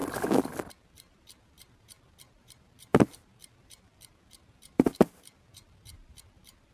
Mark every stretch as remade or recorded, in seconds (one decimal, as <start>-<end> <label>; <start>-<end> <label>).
0.0-0.7 recorded; 0.7-6.7 remade